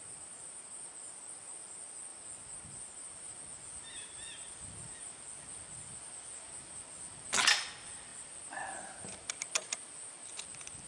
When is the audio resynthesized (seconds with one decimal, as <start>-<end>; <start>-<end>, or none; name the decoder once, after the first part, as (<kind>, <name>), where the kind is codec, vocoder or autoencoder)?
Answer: none